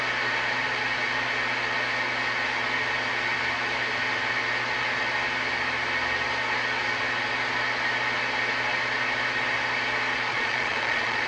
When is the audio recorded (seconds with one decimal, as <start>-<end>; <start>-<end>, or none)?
0.0-10.3